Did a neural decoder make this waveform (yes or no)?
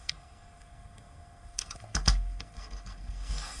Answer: yes